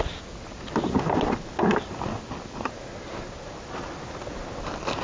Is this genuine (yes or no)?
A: yes